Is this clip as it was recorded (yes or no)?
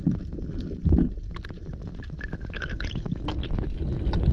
yes